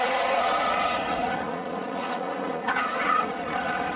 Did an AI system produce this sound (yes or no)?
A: yes